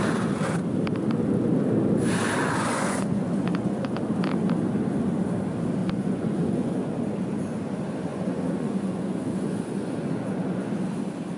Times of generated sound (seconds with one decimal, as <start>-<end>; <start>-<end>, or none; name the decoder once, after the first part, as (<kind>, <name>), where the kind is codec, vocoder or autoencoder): 2.4-4.0 (vocoder, Vocos); 5.8-6.9; 8.1-10.7